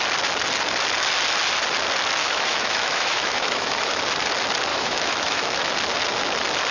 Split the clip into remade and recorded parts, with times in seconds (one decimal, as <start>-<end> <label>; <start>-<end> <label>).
0.0-2.2 recorded; 2.2-4.0 remade; 4.0-4.7 recorded; 4.7-5.7 remade; 5.7-6.7 recorded